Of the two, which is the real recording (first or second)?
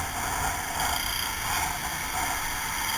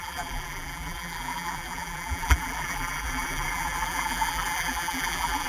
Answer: first